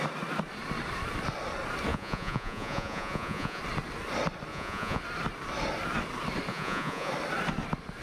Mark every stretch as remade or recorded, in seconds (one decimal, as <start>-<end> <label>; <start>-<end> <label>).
0.0-1.9 recorded; 1.9-3.6 remade; 3.6-4.5 recorded; 4.5-5.0 remade; 5.0-6.5 recorded; 6.5-7.1 remade; 7.1-8.0 recorded